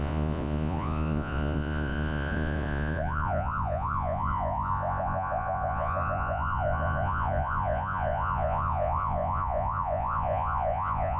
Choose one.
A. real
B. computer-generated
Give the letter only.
B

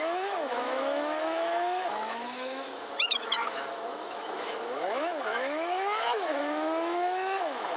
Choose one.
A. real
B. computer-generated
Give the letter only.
B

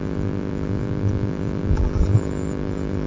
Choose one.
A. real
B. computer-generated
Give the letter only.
B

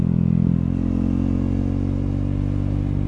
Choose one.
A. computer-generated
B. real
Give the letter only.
B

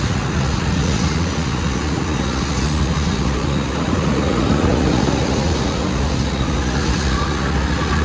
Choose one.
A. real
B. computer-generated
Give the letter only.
B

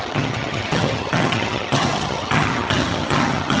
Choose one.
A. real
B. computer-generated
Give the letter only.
B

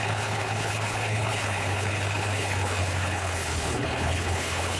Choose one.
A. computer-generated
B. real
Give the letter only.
A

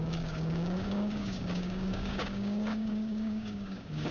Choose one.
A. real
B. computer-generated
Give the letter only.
B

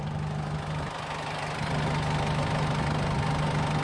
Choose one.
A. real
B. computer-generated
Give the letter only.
A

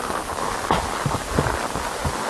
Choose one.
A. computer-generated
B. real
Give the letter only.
B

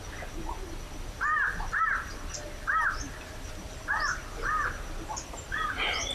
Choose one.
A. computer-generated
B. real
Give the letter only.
B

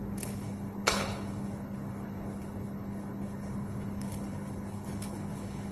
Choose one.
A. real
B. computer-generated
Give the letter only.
B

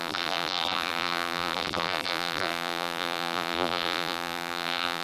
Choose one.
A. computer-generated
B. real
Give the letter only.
A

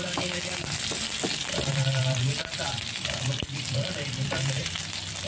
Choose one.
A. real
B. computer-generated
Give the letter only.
B